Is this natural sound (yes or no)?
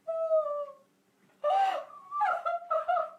yes